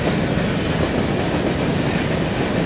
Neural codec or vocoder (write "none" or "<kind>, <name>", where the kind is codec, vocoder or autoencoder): none